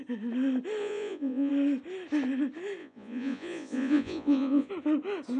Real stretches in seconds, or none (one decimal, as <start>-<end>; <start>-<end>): 0.0-0.8; 1.5-2.8; 4.7-5.4